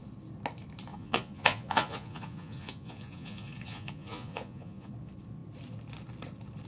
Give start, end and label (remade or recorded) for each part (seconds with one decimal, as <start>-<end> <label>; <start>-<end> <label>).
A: 0.0-0.9 recorded; 0.9-4.9 remade; 4.9-6.7 recorded